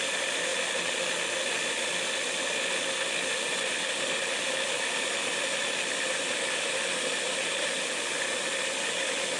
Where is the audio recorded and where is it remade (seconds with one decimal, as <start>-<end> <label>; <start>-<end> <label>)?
0.0-9.4 recorded